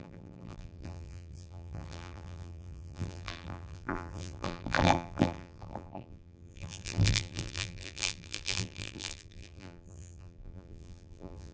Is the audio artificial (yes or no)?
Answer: yes